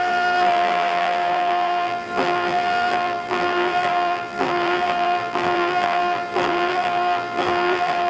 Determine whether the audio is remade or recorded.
remade